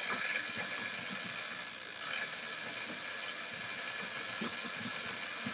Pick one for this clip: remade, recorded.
recorded